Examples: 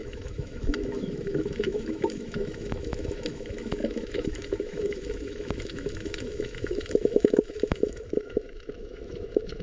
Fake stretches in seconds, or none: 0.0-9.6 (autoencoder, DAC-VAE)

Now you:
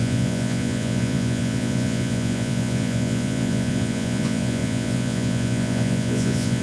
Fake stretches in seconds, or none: 0.0-6.6 (vocoder, Vocos)

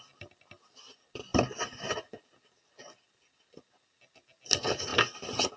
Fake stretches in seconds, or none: none

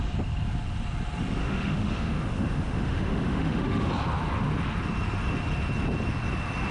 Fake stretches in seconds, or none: 1.4-3.9 (autoencoder, DAC-VAE)

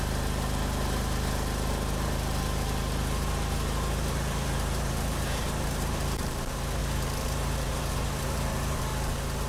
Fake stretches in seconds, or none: 0.0-8.9 (vocoder, BigVGAN v2)

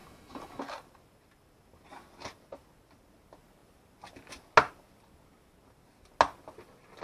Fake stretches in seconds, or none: 0.0-0.6 (autoencoder, DAC-VAE)

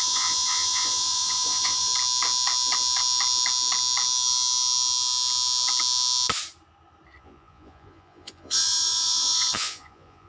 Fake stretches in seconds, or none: 0.0-1.9 (vocoder, Vocos); 7.2-10.3